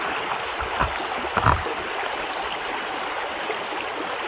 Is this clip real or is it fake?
fake